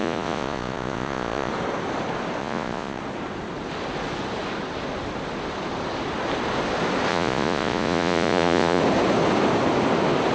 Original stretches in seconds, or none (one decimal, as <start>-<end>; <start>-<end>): 1.5-2.4; 3.0-7.1; 8.8-10.3